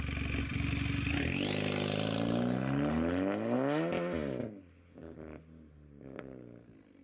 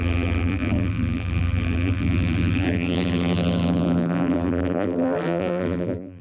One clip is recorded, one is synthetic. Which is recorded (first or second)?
first